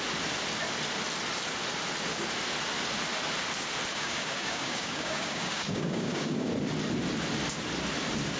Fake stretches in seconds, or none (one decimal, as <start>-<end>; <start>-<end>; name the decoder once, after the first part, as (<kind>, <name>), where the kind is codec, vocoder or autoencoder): 3.9-6.5 (codec, DAC)